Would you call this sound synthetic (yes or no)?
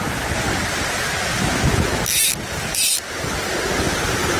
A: no